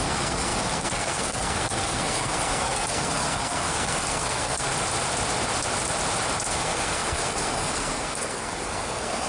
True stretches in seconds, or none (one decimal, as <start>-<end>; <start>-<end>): 4.7-6.5